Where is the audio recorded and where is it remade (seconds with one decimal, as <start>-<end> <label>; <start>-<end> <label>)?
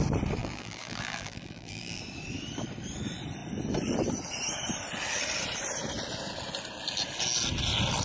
0.0-0.4 recorded; 0.4-2.0 remade; 2.0-8.0 recorded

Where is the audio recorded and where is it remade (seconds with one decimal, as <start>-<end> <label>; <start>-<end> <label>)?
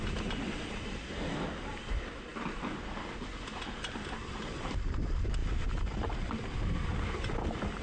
0.0-7.8 recorded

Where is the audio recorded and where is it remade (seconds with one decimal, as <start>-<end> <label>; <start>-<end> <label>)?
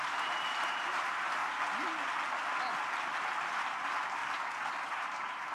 0.0-1.4 remade; 1.4-3.4 recorded; 3.4-4.2 remade; 4.2-4.7 recorded; 4.7-5.5 remade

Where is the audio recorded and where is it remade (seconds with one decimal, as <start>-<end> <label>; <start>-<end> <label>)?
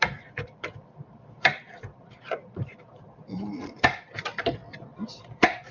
0.0-4.6 remade; 4.6-5.2 recorded; 5.2-5.7 remade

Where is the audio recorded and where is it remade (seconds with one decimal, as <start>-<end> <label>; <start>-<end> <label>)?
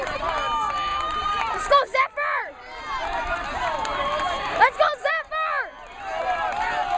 0.0-0.9 recorded; 0.9-5.1 remade; 5.1-7.0 recorded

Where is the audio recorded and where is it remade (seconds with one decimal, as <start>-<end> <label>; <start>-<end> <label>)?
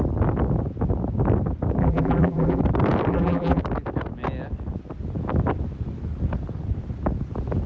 0.0-1.8 recorded; 1.8-2.6 remade; 2.6-3.1 recorded; 3.1-3.6 remade; 3.6-7.7 recorded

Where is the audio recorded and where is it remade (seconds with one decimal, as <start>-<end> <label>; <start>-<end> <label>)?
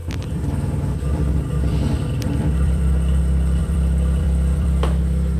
0.0-3.2 remade; 3.2-3.6 recorded; 3.6-5.4 remade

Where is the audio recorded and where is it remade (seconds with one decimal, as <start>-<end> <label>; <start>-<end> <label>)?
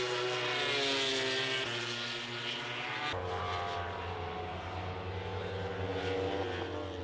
0.0-7.0 recorded